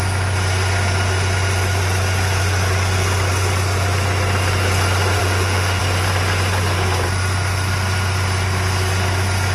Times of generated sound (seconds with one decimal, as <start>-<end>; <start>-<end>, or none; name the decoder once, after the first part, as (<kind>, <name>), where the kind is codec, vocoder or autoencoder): 5.2-5.8 (autoencoder, DAC-VAE)